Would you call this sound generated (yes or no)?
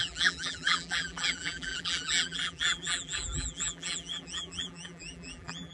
yes